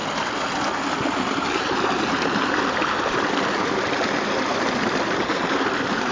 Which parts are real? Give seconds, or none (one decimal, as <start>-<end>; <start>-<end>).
0.0-6.1